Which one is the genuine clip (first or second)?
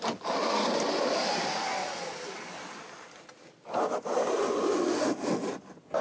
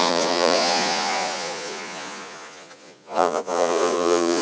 first